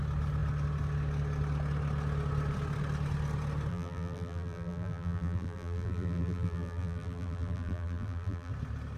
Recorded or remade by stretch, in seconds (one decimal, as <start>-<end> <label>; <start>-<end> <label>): 0.0-3.7 recorded; 3.7-8.5 remade; 8.5-9.0 recorded